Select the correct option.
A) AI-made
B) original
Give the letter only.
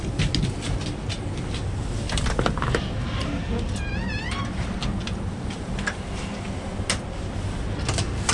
B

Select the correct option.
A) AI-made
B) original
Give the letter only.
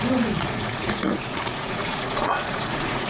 A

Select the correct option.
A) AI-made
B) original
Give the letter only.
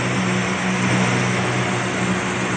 B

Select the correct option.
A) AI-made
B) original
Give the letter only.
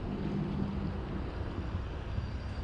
B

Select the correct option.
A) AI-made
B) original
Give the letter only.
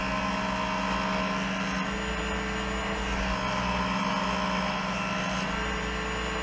B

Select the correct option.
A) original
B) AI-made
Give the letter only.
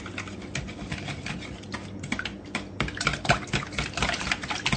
A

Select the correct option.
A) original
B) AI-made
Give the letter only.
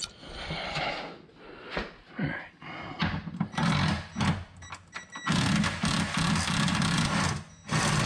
A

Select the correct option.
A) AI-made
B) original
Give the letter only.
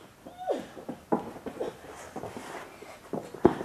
B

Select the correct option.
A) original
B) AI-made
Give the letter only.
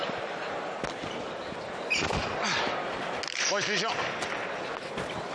A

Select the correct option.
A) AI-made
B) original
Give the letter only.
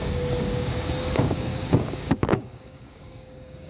A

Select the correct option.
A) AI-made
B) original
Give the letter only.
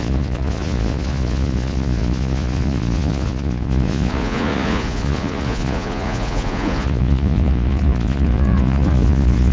A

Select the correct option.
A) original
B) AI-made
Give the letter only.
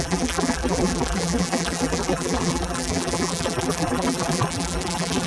B